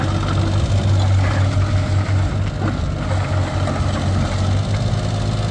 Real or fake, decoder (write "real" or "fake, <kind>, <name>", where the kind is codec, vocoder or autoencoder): real